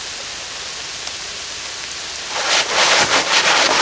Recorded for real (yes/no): yes